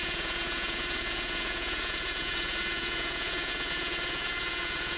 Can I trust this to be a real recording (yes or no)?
no